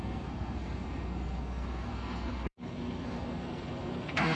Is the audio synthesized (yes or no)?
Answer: yes